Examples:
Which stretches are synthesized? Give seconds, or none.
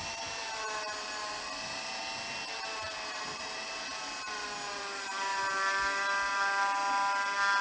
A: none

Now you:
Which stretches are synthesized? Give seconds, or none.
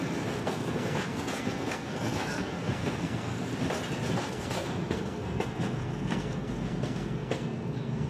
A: 0.0-3.5; 4.1-8.1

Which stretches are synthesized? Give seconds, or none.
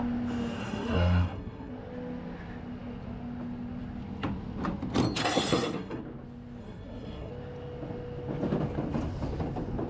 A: 0.6-1.7; 5.2-6.0; 6.6-7.3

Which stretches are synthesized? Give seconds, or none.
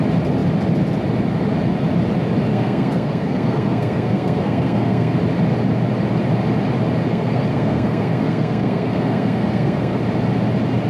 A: 2.5-5.2; 7.1-10.0